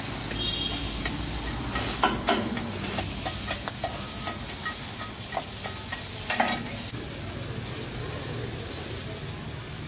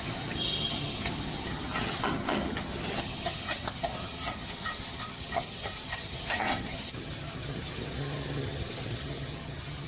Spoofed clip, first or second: second